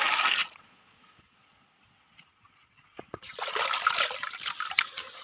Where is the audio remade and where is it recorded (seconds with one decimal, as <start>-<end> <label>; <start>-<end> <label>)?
0.0-0.4 recorded; 0.4-3.5 remade; 3.5-5.2 recorded